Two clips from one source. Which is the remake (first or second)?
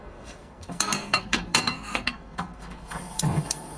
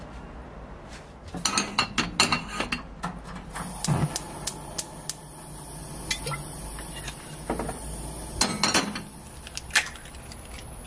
first